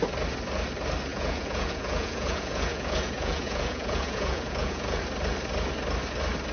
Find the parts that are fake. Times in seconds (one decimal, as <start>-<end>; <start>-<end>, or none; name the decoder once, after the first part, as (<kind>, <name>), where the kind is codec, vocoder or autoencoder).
1.1-5.0 (vocoder, Vocos)